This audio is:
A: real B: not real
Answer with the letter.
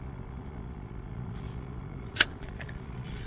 B